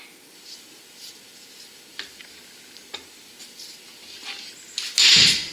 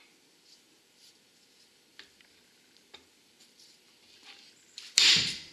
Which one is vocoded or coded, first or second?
second